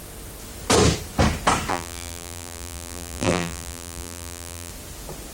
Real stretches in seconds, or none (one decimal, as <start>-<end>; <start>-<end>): 0.0-1.7; 4.7-5.3